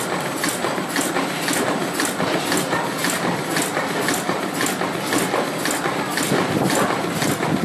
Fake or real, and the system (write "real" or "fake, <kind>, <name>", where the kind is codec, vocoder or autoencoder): real